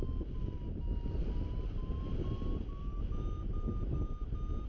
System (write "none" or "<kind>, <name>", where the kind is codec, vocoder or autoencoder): none